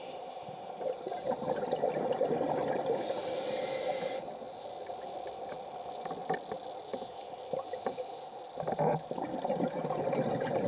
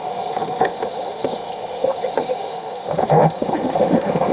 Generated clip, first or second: second